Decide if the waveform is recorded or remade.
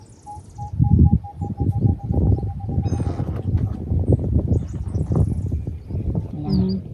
recorded